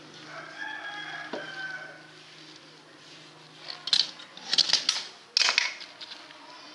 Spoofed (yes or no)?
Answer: no